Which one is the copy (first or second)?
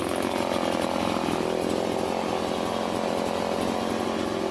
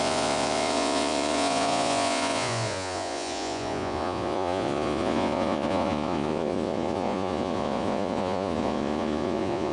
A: second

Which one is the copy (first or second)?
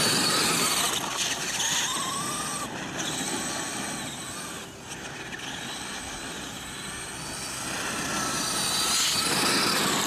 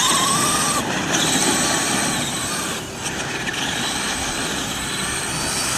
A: second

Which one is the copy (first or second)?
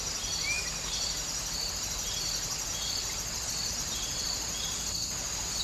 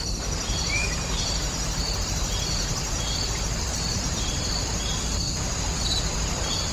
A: second